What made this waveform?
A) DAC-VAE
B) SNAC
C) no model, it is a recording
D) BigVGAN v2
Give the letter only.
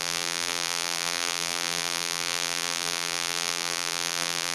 D